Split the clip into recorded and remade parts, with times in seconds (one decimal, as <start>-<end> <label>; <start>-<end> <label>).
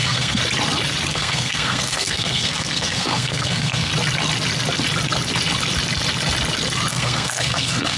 0.0-0.4 remade; 0.4-1.1 recorded; 1.1-3.9 remade; 3.9-6.9 recorded; 6.9-8.0 remade